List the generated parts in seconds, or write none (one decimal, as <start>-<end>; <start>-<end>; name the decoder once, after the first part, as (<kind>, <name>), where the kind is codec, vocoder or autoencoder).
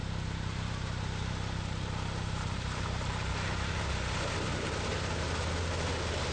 0.0-3.8 (vocoder, BigVGAN v2); 4.9-5.5